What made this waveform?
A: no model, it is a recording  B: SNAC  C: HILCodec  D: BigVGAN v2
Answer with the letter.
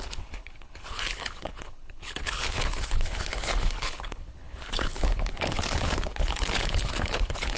C